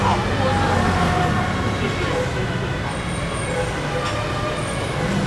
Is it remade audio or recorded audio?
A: recorded